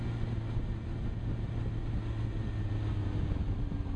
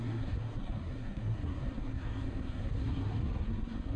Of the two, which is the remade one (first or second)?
second